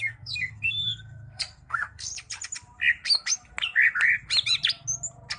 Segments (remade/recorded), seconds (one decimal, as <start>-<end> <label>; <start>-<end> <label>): 0.0-2.1 remade; 2.1-5.4 recorded